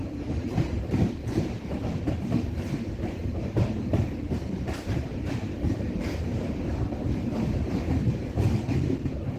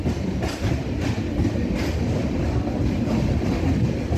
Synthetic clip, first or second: first